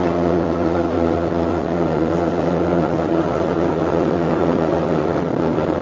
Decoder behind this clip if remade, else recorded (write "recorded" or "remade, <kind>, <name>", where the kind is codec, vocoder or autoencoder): remade, vocoder, WaveNeXt